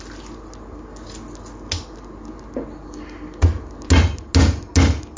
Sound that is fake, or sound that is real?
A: real